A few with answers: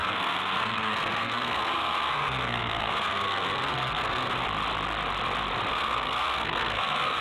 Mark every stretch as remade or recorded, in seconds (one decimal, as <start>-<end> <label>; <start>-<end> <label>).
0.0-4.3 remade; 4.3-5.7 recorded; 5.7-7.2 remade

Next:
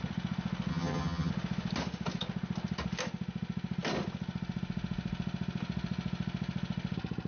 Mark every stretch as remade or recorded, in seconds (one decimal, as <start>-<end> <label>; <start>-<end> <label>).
0.0-0.7 recorded; 0.7-1.3 remade; 1.3-7.3 recorded

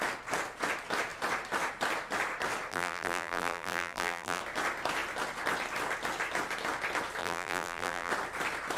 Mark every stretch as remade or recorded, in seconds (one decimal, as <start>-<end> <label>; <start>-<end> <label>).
0.0-2.7 recorded; 2.7-4.4 remade; 4.4-7.2 recorded; 7.2-8.1 remade; 8.1-8.8 recorded